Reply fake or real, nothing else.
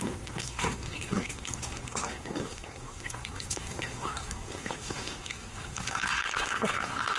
fake